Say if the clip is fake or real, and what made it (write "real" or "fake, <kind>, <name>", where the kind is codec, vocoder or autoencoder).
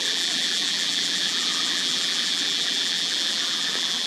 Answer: fake, vocoder, BigVGAN v2